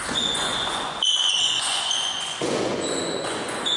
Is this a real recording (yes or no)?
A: no